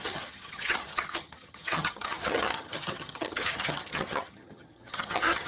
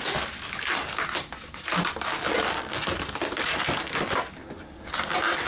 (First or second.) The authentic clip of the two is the second